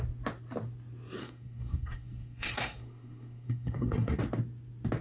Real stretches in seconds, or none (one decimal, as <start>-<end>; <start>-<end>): 0.0-1.2; 4.2-5.0